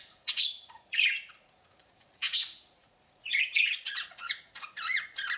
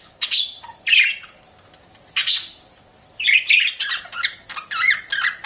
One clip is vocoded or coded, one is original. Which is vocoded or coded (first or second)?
first